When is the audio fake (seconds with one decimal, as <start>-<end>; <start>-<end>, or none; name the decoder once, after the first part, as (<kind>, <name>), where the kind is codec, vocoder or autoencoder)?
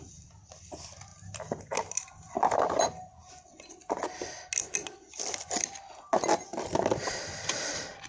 none